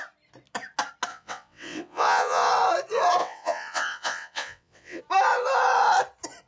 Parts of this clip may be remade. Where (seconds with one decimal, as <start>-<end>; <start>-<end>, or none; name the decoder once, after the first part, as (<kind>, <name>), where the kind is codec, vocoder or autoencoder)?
1.1-2.5 (vocoder, WaveNeXt); 3.2-5.0